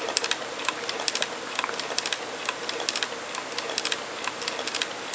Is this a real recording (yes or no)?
yes